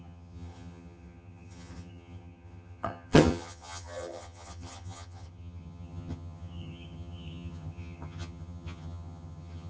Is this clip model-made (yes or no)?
yes